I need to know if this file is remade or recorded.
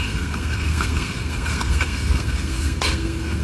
remade